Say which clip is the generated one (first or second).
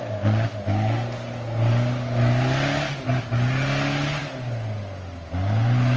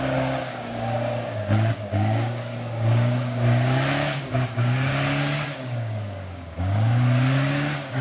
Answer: second